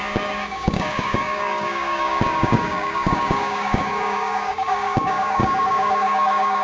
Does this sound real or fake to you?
fake